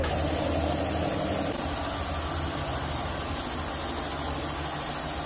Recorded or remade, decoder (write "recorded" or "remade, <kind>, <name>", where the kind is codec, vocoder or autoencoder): recorded